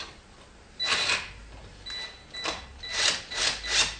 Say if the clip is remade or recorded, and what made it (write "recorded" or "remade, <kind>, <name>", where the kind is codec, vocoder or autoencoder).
recorded